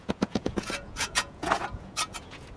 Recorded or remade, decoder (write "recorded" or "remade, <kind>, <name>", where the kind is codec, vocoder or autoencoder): remade, vocoder, Vocos